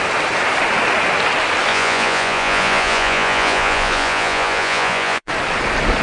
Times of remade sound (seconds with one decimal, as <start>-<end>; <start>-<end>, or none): 1.7-5.3